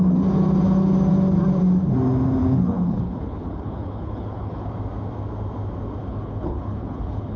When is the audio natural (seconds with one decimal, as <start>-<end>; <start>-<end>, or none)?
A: 0.0-2.4; 4.7-6.0